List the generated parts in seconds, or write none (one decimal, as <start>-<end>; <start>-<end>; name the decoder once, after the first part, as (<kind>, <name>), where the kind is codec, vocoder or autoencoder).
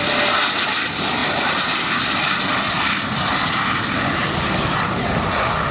none